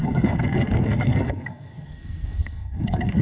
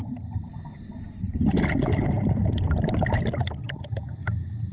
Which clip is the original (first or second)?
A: second